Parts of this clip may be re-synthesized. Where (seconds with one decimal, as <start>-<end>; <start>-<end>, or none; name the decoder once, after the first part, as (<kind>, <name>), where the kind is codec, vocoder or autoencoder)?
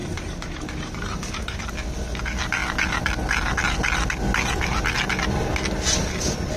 0.0-1.7 (vocoder, BigVGAN v2)